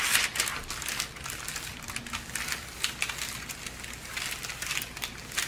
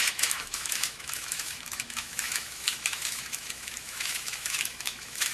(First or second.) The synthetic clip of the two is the second